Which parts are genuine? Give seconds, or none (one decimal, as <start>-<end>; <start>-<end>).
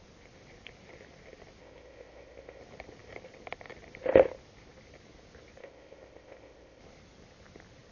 0.0-1.6; 2.6-5.6; 6.8-7.9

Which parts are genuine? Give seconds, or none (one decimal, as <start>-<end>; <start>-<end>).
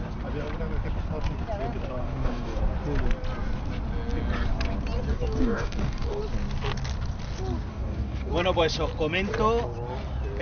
0.0-2.0; 2.6-5.1; 6.2-7.7; 8.3-10.4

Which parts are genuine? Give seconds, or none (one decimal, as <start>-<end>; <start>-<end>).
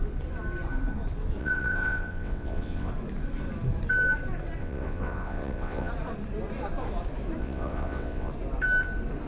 0.0-1.4; 2.9-4.6; 5.9-7.4; 8.3-9.3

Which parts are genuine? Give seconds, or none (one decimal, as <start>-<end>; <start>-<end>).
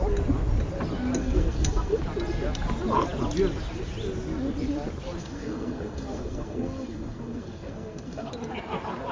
0.0-1.2; 2.0-5.2; 8.3-9.1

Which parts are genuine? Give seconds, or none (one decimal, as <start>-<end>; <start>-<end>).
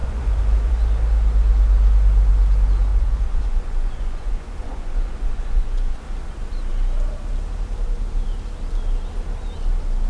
0.7-2.9; 6.0-10.1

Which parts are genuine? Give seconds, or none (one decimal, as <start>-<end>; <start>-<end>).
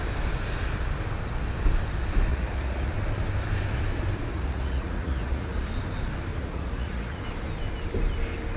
0.0-2.3; 2.9-4.3; 5.6-6.3; 7.2-8.6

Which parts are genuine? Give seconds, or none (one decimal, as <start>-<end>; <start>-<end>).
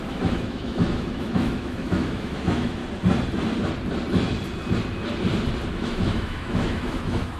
2.8-5.7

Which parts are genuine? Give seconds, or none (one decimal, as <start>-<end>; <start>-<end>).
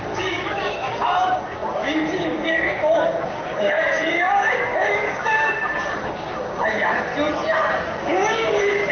7.1-8.0